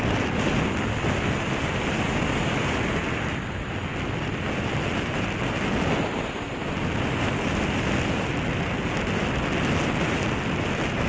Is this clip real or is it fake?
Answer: real